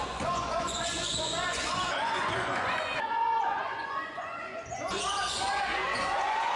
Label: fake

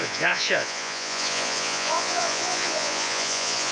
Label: fake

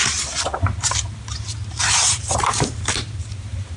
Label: fake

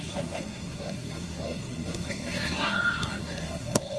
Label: fake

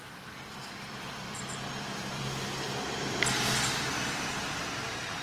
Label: fake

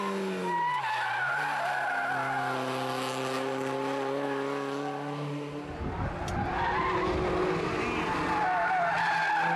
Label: real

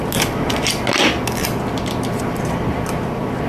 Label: real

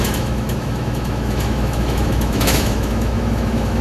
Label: fake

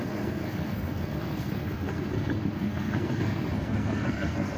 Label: fake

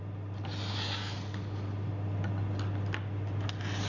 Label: real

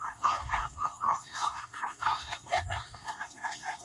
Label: fake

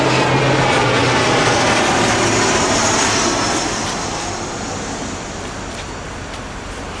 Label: real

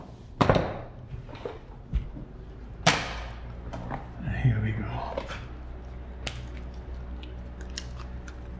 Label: real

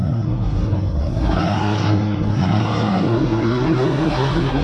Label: fake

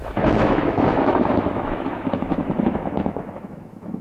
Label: fake